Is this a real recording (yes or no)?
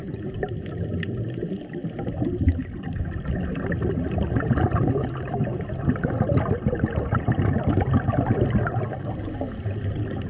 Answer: yes